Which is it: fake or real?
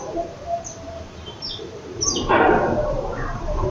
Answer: fake